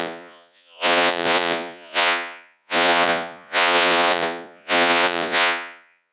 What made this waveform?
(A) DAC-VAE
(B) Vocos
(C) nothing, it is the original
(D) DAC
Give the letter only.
B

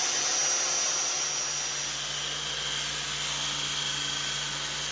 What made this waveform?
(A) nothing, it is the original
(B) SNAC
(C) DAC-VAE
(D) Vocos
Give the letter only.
A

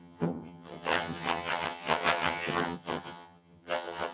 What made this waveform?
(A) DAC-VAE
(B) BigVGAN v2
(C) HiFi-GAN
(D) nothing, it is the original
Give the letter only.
C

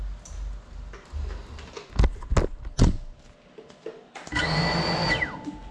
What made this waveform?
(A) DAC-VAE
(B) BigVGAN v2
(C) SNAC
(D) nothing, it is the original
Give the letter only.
D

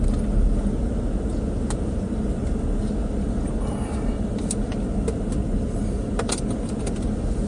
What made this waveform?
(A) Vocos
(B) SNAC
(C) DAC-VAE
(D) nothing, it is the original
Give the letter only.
D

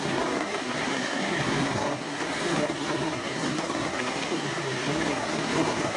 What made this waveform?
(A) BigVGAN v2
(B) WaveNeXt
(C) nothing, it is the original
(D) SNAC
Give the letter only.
D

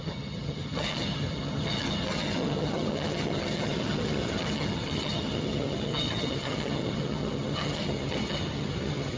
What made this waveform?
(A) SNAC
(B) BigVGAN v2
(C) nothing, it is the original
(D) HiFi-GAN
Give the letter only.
D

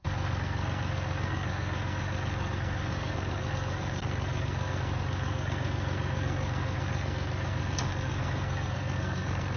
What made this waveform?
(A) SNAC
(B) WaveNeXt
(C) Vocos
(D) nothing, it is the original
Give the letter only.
A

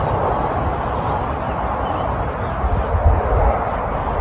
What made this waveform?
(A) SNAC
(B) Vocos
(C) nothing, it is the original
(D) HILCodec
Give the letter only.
C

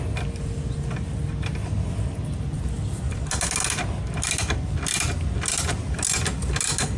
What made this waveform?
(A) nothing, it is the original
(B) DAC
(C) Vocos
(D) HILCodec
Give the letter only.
A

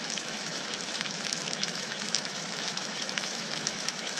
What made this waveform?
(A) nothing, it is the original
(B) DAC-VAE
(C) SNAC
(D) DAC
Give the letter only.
B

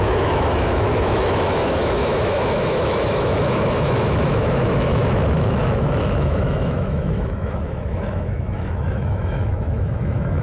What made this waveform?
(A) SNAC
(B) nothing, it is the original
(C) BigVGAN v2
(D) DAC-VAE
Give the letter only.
D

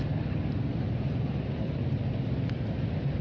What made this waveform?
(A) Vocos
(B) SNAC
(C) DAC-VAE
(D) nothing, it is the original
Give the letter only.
D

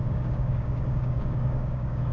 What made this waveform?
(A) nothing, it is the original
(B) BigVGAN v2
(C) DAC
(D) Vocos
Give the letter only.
C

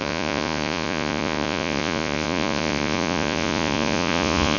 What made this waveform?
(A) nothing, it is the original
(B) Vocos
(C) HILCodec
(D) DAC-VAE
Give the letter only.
B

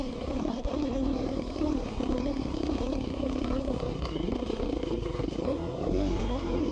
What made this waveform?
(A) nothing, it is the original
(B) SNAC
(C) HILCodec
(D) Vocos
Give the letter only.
B